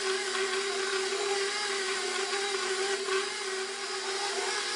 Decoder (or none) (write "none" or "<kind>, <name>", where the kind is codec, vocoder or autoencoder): none